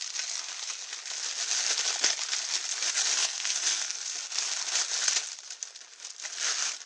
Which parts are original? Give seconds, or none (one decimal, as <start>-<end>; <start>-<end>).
0.0-3.2; 4.0-6.9